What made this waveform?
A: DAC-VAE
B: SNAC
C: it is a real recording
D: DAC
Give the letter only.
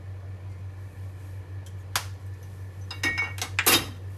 C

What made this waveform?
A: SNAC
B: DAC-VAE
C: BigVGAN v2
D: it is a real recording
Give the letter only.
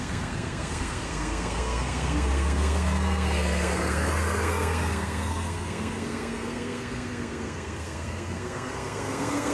A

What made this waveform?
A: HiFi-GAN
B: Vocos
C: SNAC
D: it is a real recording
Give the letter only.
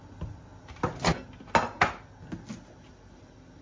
D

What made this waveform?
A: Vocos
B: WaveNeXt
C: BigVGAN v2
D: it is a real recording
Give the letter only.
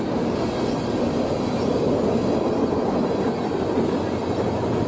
D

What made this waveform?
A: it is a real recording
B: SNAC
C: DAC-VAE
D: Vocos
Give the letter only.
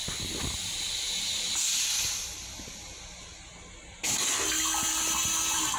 A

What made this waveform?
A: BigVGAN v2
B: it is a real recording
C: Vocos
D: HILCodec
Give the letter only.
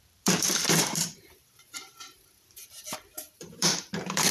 A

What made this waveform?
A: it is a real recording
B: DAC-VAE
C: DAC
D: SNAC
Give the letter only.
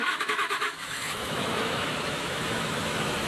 B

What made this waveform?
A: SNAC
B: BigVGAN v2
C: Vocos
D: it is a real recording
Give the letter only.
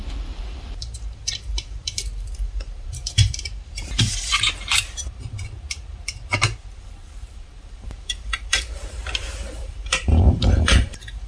B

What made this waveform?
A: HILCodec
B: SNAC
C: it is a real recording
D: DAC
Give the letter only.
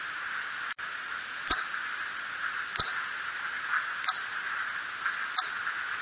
C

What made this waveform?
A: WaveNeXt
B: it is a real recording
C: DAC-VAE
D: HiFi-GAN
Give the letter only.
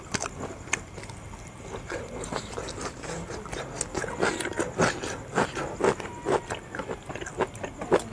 B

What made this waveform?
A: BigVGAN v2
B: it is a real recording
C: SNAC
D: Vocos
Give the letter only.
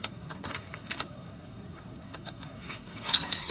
C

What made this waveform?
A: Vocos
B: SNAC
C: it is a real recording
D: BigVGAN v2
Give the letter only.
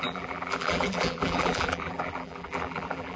D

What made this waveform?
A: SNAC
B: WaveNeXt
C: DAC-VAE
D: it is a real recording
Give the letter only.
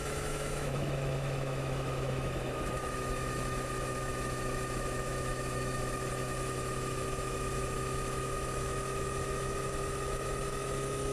C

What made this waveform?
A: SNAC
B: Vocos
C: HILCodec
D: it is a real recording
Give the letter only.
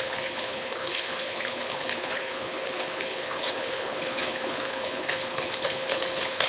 C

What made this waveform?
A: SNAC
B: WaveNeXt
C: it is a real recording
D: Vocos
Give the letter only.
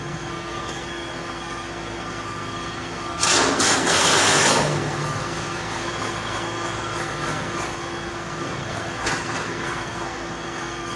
A